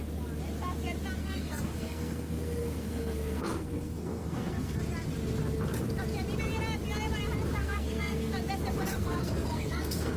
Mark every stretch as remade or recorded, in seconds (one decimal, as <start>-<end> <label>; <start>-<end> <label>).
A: 0.0-1.2 recorded; 1.2-4.8 remade; 4.8-7.6 recorded; 7.6-8.3 remade; 8.3-8.9 recorded; 8.9-10.2 remade